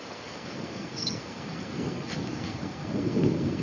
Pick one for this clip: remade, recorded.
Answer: remade